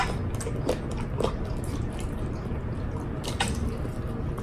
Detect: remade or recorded recorded